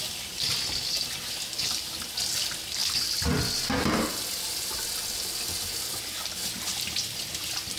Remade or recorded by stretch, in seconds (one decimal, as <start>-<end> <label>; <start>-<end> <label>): 0.0-7.8 recorded